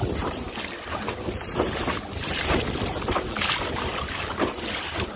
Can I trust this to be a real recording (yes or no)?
yes